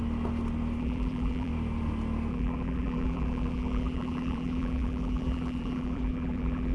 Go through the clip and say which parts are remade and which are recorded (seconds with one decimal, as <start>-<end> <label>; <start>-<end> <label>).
0.0-0.8 recorded; 0.8-1.5 remade; 1.5-2.3 recorded; 2.3-6.7 remade